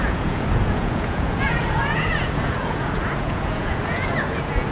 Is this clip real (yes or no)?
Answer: no